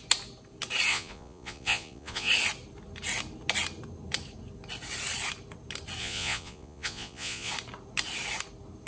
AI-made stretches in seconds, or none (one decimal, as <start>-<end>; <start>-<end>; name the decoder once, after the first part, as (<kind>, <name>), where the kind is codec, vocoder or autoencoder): 0.9-2.3 (vocoder, Vocos); 6.0-7.5